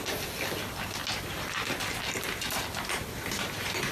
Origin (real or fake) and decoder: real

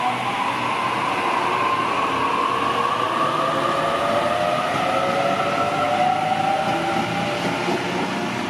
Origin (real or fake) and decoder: real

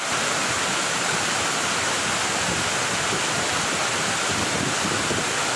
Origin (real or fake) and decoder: real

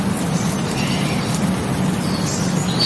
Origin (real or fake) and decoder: real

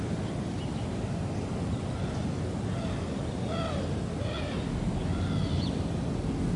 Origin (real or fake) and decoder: real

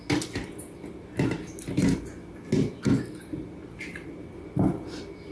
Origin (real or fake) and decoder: real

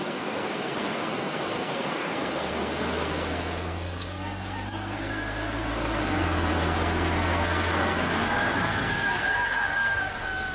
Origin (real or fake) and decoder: fake, codec, SNAC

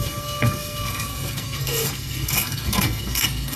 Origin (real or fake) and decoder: fake, codec, SNAC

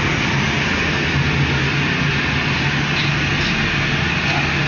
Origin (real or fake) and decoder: real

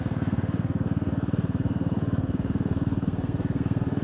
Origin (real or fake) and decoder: fake, codec, SNAC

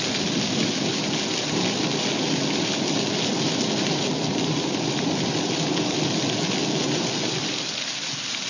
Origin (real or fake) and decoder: real